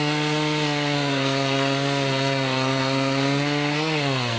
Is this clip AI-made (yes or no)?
yes